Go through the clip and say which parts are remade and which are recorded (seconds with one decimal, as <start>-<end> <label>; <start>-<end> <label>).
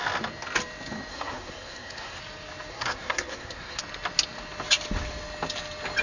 0.0-1.1 recorded; 1.1-2.2 remade; 2.2-2.7 recorded; 2.7-3.8 remade; 3.8-6.0 recorded